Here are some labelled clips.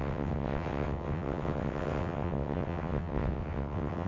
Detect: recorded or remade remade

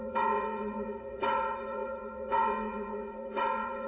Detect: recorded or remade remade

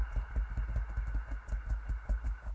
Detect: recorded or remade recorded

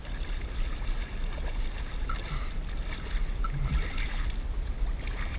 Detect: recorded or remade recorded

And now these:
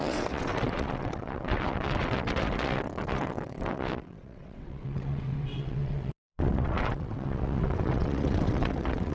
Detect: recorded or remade remade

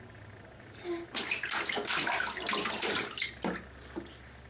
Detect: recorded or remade recorded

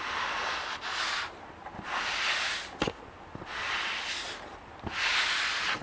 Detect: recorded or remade recorded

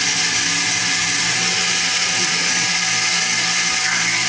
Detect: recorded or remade recorded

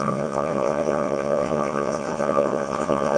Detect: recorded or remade remade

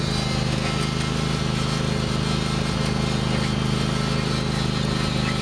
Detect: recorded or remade recorded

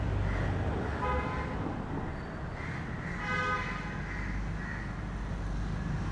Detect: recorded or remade recorded